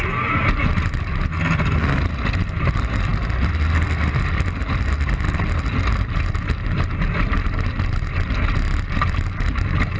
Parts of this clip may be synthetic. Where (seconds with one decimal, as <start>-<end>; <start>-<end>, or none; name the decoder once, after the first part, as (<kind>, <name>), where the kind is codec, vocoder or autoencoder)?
none